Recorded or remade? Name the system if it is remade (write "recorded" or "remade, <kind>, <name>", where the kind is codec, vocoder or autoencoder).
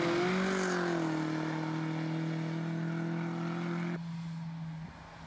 recorded